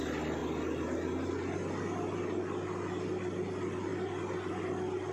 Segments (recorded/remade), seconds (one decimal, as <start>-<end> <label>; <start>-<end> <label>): 0.0-5.1 recorded